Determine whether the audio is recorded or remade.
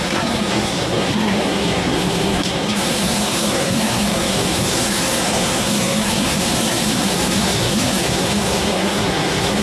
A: remade